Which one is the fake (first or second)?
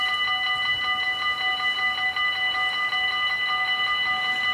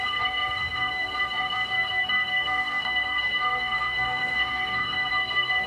second